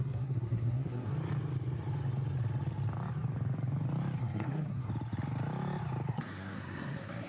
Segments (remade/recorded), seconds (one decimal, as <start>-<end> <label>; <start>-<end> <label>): 0.0-1.1 remade; 1.1-4.2 recorded; 4.2-4.9 remade; 4.9-6.1 recorded; 6.1-7.3 remade